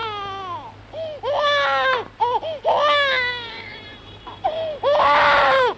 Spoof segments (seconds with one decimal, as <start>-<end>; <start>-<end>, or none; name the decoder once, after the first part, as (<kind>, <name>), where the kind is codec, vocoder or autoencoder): 3.5-5.8 (vocoder, BigVGAN v2)